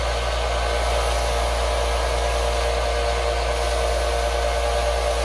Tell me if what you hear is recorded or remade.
recorded